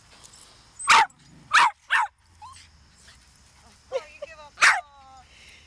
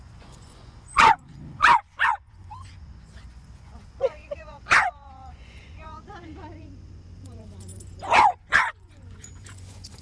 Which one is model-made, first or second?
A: second